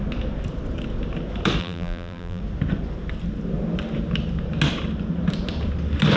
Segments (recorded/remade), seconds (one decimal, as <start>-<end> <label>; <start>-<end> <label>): 0.0-1.6 recorded; 1.6-2.4 remade; 2.4-6.2 recorded